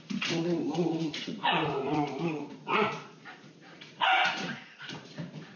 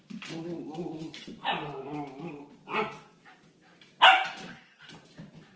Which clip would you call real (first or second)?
second